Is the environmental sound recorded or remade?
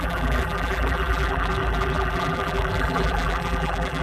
remade